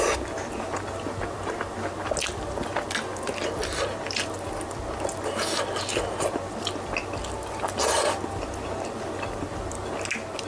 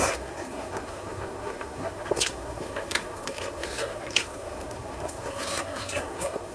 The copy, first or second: second